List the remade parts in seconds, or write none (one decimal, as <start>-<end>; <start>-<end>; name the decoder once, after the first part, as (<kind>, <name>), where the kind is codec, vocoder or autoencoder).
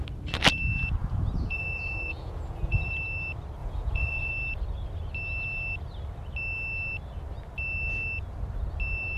1.0-2.9 (vocoder, Vocos); 3.6-4.3